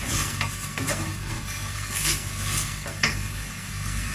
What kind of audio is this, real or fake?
fake